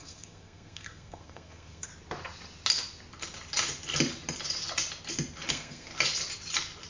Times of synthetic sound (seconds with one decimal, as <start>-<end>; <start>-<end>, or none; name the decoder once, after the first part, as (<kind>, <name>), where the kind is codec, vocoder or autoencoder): 0.0-1.9 (codec, SNAC); 5.5-5.9